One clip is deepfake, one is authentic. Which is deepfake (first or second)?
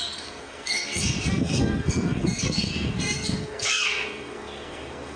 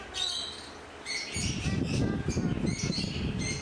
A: first